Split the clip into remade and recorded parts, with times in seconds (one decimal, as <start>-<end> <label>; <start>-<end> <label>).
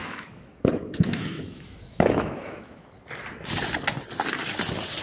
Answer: 0.0-2.9 remade; 2.9-5.0 recorded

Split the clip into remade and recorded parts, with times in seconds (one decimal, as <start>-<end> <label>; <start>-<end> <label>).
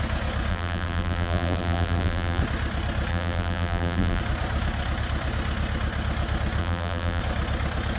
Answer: 0.0-0.5 recorded; 0.5-2.4 remade; 2.4-3.1 recorded; 3.1-4.2 remade; 4.2-6.6 recorded; 6.6-7.2 remade; 7.2-8.0 recorded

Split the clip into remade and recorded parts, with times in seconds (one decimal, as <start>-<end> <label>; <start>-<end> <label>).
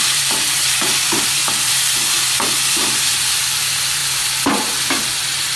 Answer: 0.0-5.6 remade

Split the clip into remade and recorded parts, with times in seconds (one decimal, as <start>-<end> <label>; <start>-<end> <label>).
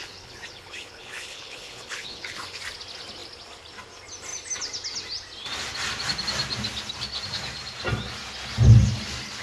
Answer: 0.0-2.6 remade; 2.6-9.4 recorded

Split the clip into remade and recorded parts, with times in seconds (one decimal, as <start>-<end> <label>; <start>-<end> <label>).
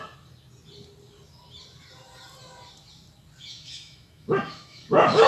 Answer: 0.0-3.4 recorded; 3.4-5.3 remade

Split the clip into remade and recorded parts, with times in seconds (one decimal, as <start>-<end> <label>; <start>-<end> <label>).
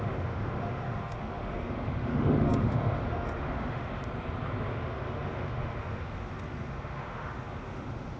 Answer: 0.0-4.0 remade; 4.0-4.7 recorded; 4.7-8.2 remade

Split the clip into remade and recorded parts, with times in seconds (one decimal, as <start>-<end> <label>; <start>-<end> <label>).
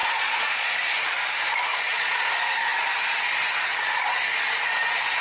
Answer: 0.0-0.7 remade; 0.7-1.7 recorded; 1.7-2.3 remade; 2.3-5.2 recorded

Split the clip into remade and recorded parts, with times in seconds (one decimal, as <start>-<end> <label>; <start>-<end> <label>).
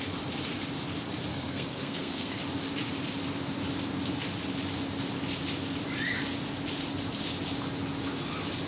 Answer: 0.0-1.3 recorded; 1.3-2.4 remade; 2.4-8.7 recorded